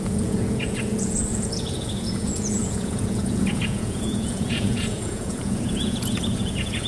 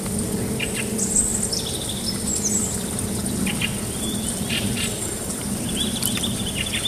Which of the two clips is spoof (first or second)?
first